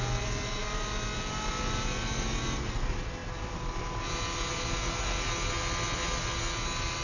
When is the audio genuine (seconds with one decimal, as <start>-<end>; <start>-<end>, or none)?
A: 0.0-7.0